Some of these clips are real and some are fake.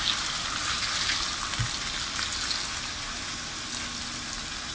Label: real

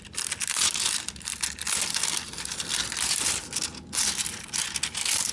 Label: real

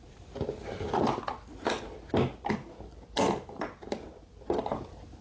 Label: real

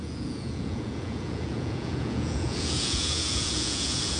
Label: fake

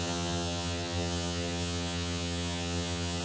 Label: fake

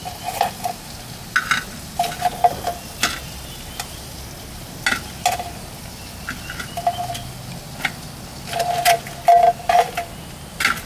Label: real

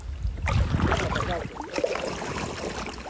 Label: real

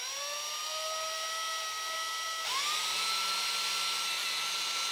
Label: real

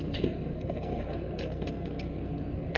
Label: fake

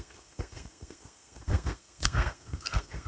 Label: fake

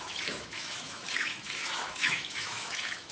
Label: fake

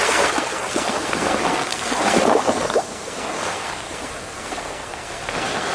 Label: fake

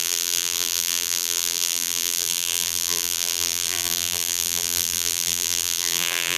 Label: fake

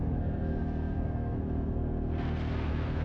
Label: fake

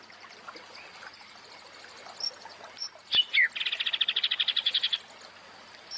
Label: real